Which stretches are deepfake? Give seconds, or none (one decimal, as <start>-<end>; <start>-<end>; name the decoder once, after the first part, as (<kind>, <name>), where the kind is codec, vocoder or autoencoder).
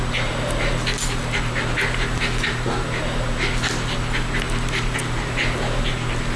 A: none